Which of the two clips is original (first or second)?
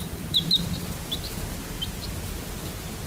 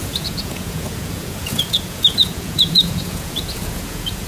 first